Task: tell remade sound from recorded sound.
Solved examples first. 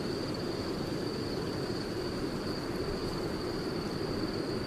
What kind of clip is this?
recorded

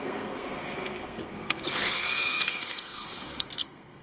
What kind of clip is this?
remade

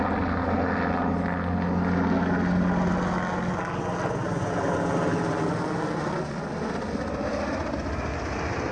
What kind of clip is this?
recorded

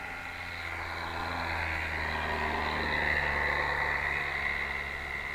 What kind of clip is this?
recorded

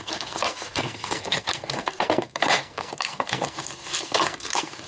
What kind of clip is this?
remade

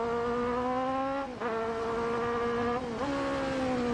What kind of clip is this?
recorded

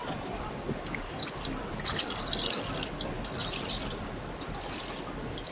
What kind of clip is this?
recorded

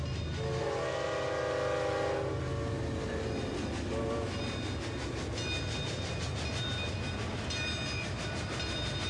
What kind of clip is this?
recorded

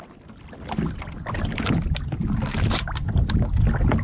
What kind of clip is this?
recorded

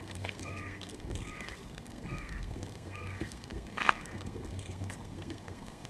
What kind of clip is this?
remade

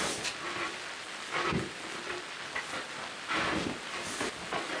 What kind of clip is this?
recorded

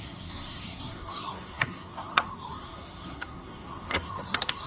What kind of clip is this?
remade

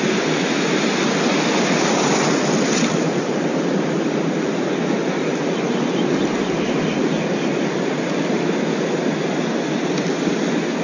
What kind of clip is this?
recorded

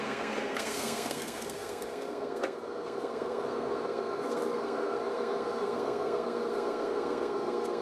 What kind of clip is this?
remade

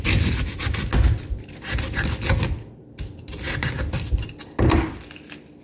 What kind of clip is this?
recorded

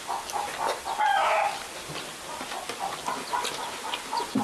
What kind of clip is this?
recorded